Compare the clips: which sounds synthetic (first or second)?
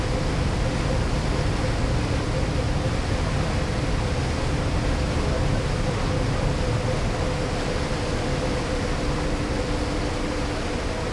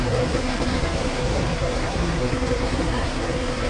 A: second